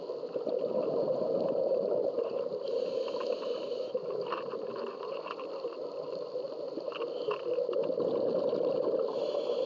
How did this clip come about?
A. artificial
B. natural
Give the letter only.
B